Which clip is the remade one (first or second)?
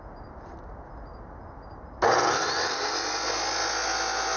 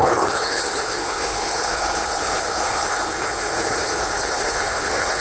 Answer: second